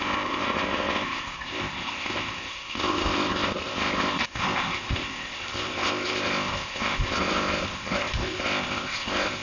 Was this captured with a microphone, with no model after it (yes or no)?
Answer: no